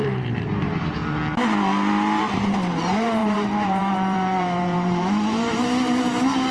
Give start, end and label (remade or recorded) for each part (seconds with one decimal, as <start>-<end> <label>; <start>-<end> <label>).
0.0-1.0 remade; 1.0-2.2 recorded; 2.2-6.5 remade